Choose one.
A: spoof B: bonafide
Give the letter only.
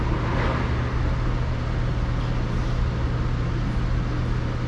B